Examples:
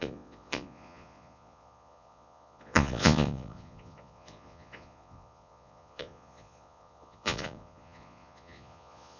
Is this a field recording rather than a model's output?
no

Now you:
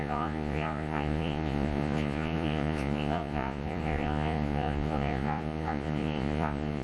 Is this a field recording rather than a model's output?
no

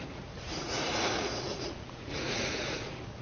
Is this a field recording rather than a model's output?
no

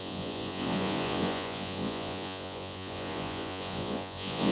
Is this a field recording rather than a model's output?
no